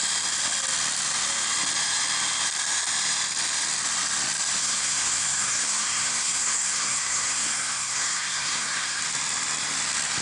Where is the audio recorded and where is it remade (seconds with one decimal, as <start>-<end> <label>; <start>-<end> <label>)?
0.0-4.6 recorded; 4.6-9.0 remade; 9.0-10.2 recorded